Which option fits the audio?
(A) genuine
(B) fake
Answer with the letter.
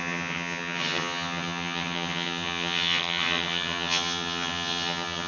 B